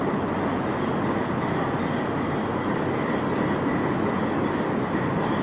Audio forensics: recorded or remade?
recorded